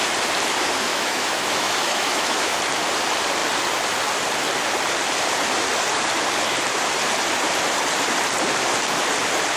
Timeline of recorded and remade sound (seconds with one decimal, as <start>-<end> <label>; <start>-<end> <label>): 0.0-0.9 recorded; 0.9-2.6 remade; 2.6-9.6 recorded